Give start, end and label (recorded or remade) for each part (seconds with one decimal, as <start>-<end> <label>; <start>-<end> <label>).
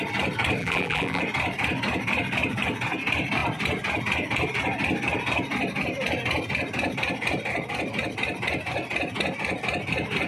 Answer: 0.0-0.6 recorded; 0.6-1.2 remade; 1.2-10.3 recorded